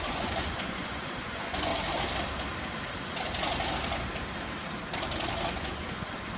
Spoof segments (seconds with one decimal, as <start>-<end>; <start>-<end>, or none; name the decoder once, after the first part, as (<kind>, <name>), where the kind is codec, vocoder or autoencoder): 0.0-1.7 (vocoder, Vocos); 5.5-6.4